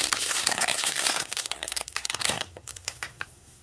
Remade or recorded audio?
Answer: remade